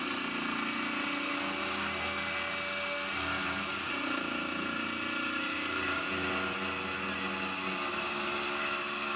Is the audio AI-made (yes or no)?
no